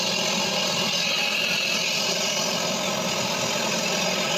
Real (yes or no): yes